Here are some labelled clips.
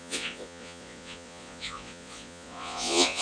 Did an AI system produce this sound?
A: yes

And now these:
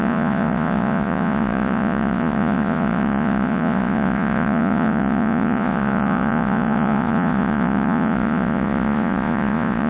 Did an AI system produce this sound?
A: yes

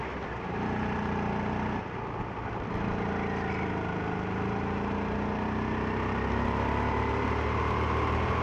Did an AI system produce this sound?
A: no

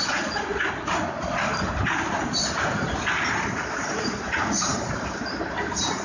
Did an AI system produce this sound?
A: no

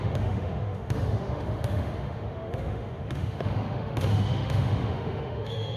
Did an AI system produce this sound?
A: yes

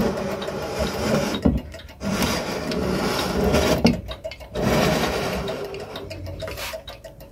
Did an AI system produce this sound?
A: yes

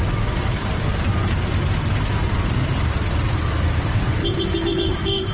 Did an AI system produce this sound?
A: yes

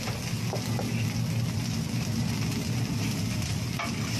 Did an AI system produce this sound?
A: no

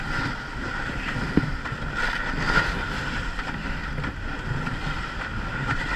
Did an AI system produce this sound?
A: no